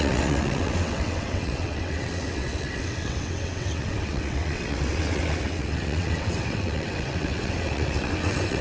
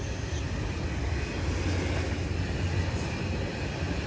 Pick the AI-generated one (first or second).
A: first